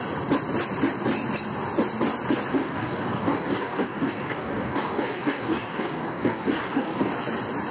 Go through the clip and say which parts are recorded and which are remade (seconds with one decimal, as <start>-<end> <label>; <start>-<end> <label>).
0.0-2.5 recorded; 2.5-7.1 remade; 7.1-7.7 recorded